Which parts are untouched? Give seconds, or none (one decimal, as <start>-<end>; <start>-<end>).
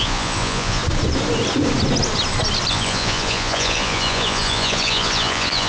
0.8-2.7